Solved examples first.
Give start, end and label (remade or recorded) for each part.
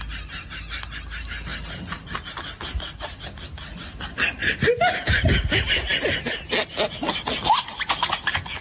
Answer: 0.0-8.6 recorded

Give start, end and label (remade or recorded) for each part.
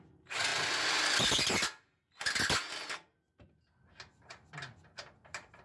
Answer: 0.0-5.6 recorded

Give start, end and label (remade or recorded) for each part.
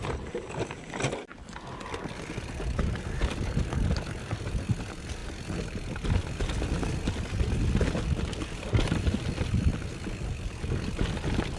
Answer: 0.0-11.6 recorded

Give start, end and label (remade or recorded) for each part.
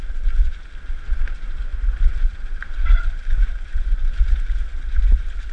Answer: 0.0-1.7 recorded; 1.7-5.0 remade; 5.0-5.5 recorded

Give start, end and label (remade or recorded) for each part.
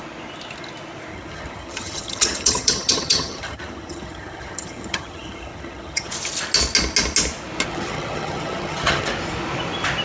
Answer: 0.0-1.1 recorded; 1.1-6.1 remade; 6.1-7.7 recorded; 7.7-9.1 remade; 9.1-10.0 recorded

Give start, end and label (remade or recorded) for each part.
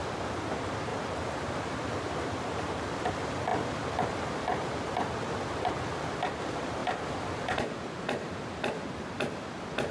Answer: 0.0-0.9 recorded; 0.9-3.1 remade; 3.1-3.5 recorded; 3.5-5.7 remade; 5.7-9.9 recorded